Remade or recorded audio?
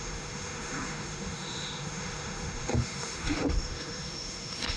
remade